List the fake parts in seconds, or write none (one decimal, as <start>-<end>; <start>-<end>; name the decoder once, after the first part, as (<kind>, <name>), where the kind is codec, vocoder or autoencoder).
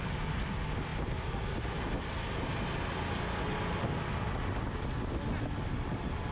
none